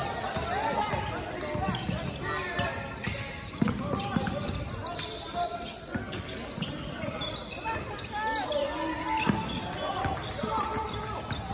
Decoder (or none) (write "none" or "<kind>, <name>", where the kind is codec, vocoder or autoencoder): none